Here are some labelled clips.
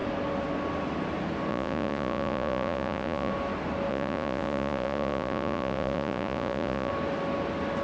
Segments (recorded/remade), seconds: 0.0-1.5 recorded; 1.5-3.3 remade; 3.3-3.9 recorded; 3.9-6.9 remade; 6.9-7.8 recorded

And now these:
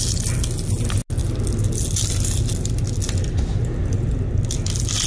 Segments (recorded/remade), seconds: 0.0-5.1 recorded

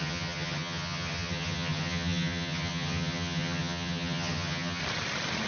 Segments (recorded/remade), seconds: 0.0-4.8 remade; 4.8-5.5 recorded

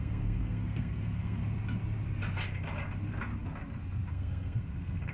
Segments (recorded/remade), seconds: 0.0-1.4 remade; 1.4-4.1 recorded; 4.1-5.1 remade

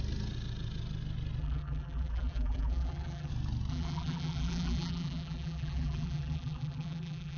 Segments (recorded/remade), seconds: 0.0-1.4 recorded; 1.4-3.3 remade; 3.3-3.7 recorded; 3.7-7.4 remade

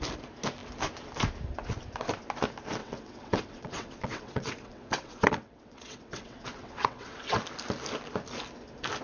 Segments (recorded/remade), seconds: 0.0-2.8 recorded; 2.8-7.4 remade; 7.4-9.0 recorded

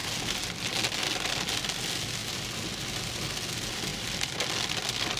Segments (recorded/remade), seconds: 0.0-5.2 recorded

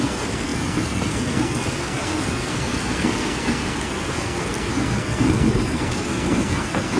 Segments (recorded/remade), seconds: 0.0-7.0 remade